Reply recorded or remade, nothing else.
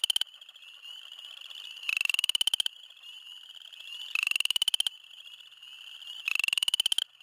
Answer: recorded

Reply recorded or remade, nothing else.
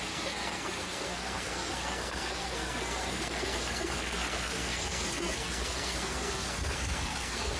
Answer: remade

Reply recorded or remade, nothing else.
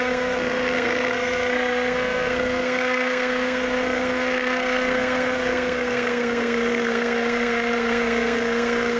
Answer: remade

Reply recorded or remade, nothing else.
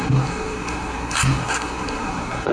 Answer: remade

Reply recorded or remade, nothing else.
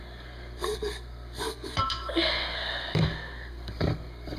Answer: remade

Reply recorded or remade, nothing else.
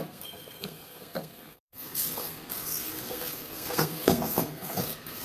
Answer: remade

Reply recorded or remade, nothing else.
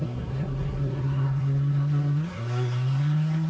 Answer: remade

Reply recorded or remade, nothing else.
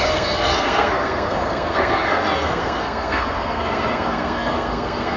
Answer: remade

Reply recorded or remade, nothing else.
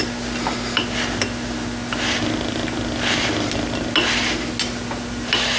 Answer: recorded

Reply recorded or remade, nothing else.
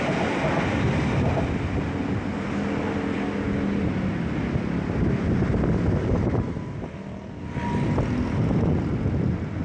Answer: recorded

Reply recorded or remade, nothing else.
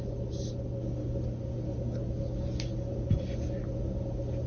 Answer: recorded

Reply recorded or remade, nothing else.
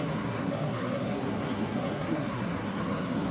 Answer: remade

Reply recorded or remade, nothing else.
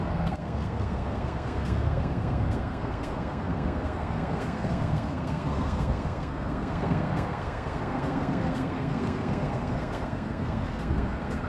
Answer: remade